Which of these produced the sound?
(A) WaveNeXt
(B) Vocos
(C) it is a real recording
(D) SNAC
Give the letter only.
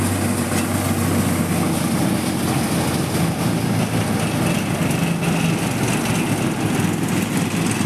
C